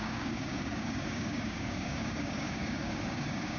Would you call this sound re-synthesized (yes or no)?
yes